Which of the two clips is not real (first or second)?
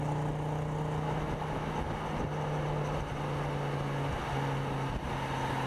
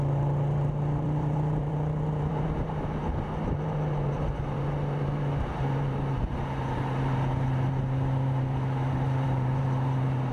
second